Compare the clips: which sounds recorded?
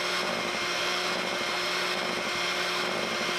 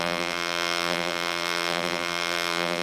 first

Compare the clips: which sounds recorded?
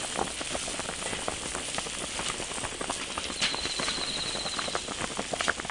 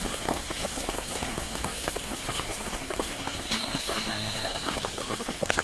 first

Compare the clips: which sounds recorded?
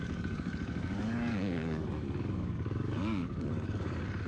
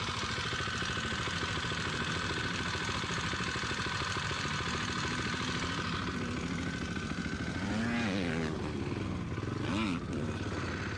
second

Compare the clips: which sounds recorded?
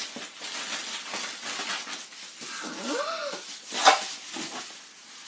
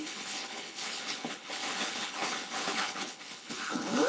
first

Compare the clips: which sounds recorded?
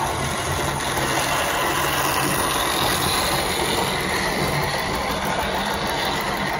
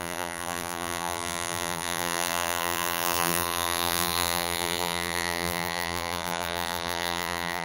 first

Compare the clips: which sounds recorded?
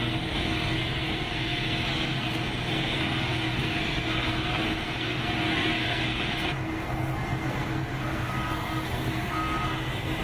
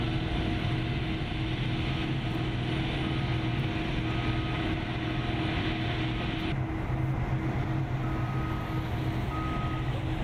second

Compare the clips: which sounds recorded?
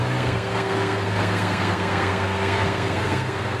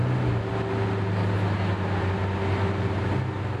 second